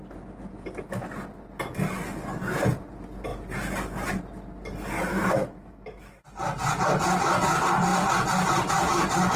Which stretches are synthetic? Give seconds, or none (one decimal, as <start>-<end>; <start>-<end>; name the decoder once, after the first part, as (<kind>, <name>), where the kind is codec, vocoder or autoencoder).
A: 5.1-6.1 (autoencoder, DAC-VAE)